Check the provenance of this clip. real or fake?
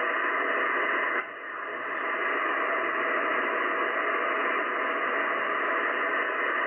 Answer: real